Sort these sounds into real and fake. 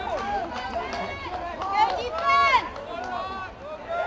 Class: real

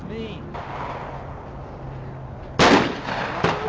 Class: real